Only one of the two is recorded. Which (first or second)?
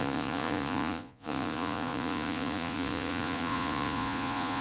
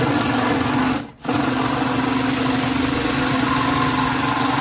second